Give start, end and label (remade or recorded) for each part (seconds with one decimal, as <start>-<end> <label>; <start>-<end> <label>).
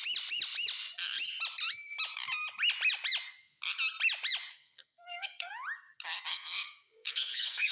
0.0-4.5 recorded; 4.5-5.5 remade; 5.5-6.3 recorded; 6.3-7.7 remade